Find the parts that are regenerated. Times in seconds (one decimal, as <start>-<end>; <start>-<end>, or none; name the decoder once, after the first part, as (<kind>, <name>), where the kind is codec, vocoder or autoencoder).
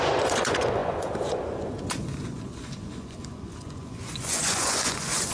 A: 0.0-5.3 (vocoder, Vocos)